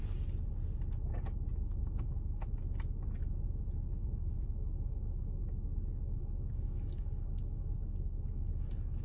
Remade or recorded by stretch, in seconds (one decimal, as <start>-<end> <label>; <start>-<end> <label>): 0.0-1.6 recorded; 1.6-2.6 remade; 2.6-4.0 recorded; 4.0-5.4 remade; 5.4-6.2 recorded; 6.2-9.0 remade